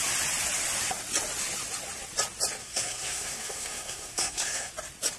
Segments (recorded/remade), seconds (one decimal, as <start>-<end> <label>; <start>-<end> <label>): 0.0-2.6 recorded; 2.6-4.7 remade; 4.7-5.2 recorded